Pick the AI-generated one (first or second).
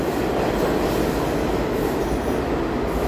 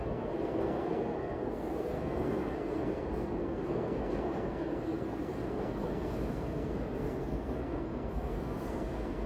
second